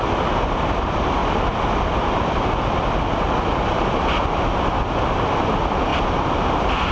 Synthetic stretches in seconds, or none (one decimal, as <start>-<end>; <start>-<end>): 1.2-3.1